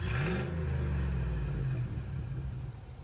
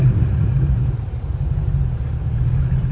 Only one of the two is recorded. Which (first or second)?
first